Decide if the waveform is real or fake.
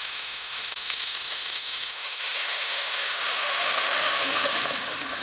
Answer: fake